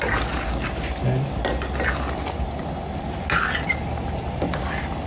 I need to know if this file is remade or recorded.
recorded